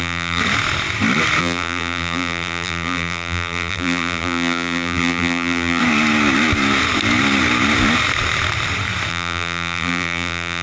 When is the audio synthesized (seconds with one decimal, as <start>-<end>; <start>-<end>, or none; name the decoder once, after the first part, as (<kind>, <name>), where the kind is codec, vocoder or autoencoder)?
0.0-0.4 (vocoder, BigVGAN v2); 1.4-5.8; 9.1-10.6